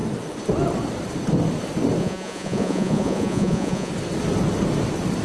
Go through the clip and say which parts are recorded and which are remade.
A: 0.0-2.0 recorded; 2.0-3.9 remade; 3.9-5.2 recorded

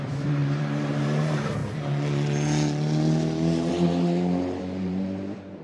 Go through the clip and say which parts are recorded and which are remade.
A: 0.0-1.6 remade; 1.6-3.7 recorded; 3.7-5.6 remade

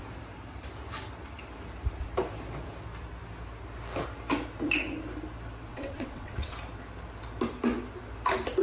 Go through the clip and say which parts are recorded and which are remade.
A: 0.0-5.7 recorded; 5.7-6.5 remade; 6.5-8.6 recorded